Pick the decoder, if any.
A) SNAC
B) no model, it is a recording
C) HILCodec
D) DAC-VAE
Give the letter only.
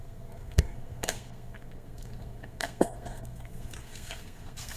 A